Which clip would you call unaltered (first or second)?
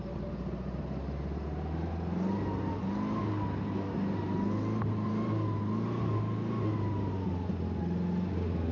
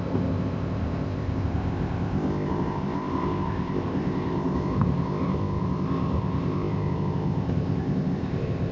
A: first